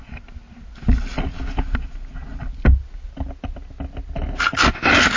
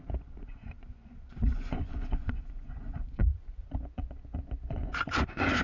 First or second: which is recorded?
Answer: first